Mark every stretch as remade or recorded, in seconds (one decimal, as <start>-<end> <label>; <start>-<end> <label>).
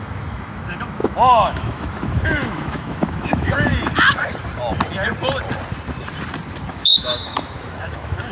0.0-3.7 remade; 3.7-6.7 recorded; 6.7-8.3 remade